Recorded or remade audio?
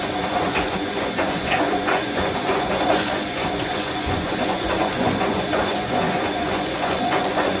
remade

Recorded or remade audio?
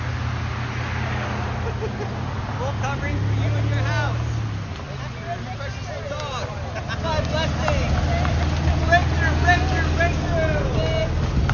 recorded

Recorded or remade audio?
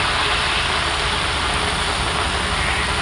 recorded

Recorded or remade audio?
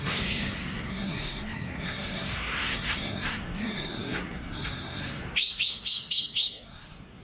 remade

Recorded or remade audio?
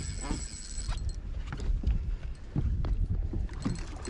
recorded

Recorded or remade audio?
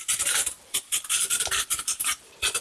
recorded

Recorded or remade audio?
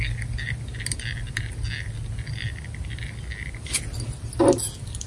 recorded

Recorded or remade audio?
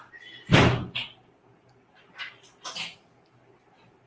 recorded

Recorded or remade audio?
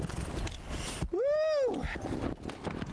recorded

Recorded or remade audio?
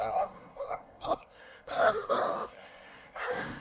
remade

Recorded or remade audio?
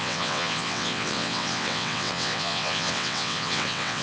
remade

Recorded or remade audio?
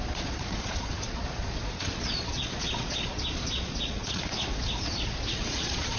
remade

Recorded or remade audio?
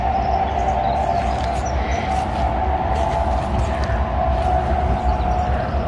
recorded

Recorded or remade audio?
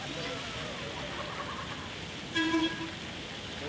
recorded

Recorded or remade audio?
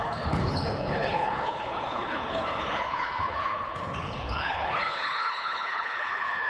remade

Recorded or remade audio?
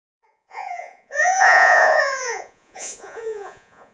remade